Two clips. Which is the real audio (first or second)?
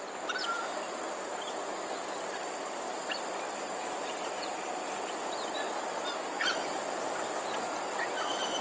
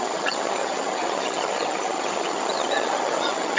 first